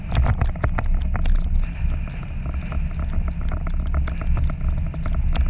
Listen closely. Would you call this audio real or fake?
real